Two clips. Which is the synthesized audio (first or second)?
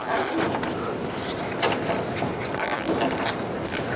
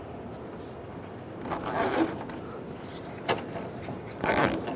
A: second